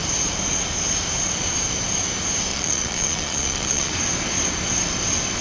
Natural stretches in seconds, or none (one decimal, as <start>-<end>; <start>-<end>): 0.0-2.5; 3.9-5.4